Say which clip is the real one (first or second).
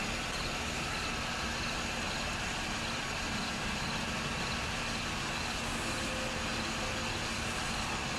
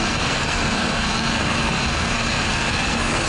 first